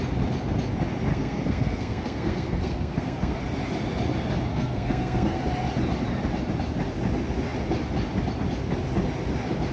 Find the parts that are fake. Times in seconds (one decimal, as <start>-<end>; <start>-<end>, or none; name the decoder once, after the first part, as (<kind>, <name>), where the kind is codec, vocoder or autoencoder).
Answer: 1.1-3.4 (codec, SNAC); 4.5-5.4